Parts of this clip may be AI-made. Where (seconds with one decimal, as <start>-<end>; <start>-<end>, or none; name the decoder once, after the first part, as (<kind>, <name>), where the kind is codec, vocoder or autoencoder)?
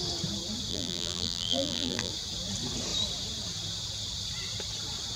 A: 0.7-2.1 (vocoder, BigVGAN v2)